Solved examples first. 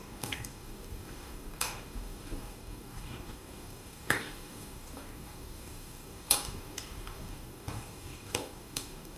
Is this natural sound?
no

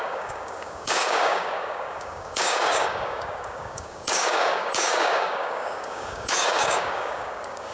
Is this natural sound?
no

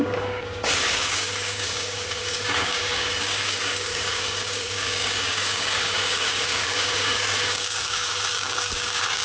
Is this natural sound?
no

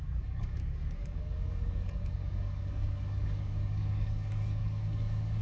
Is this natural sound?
no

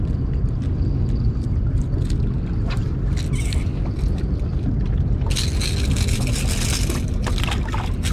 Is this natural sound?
yes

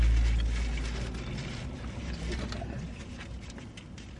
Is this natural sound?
yes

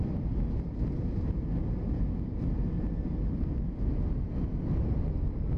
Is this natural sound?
yes